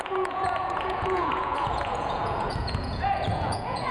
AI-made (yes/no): yes